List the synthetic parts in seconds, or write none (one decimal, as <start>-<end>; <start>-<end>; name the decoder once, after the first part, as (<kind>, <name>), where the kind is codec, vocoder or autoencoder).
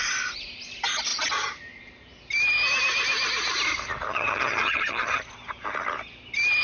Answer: 4.1-5.2 (vocoder, HiFi-GAN)